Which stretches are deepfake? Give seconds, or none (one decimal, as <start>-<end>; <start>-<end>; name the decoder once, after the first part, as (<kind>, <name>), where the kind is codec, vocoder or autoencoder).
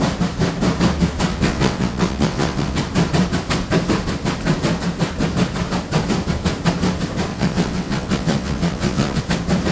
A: 1.3-2.8 (vocoder, WaveNeXt); 7.3-9.2